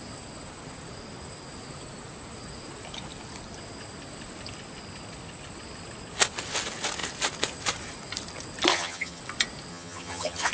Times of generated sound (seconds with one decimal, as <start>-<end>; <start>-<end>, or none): 8.7-9.2; 9.7-10.5